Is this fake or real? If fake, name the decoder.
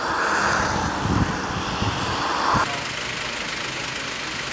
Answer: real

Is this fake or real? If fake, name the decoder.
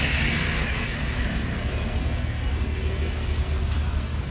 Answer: fake, codec, SNAC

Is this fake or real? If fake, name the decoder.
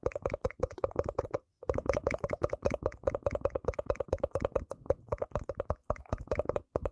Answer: fake, vocoder, Vocos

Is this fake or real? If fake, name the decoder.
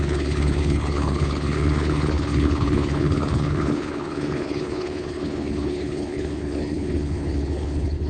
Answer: fake, codec, HILCodec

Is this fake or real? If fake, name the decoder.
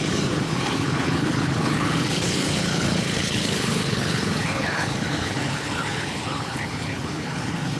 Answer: fake, codec, HILCodec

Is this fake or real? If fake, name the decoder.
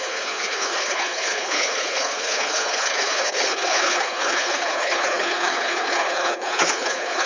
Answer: fake, codec, HILCodec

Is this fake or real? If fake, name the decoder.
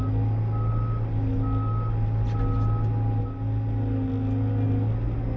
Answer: real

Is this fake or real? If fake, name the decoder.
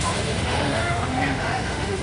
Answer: fake, autoencoder, DAC-VAE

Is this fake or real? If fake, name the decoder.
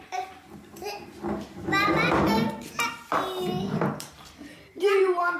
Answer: fake, vocoder, BigVGAN v2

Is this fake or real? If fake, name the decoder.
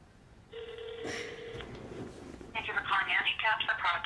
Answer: fake, vocoder, Vocos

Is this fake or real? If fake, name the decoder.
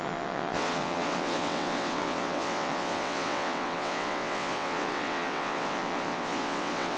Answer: fake, vocoder, WaveNeXt